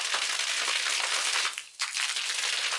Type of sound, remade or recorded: recorded